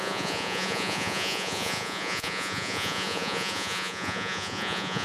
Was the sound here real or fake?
fake